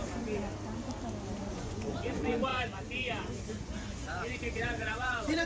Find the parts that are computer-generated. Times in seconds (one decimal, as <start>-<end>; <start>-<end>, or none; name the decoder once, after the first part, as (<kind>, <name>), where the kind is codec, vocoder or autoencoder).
1.5-5.5 (vocoder, Vocos)